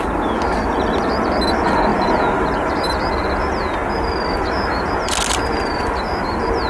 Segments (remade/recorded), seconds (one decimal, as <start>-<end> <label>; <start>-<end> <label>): 0.0-1.9 recorded; 1.9-3.1 remade; 3.1-6.7 recorded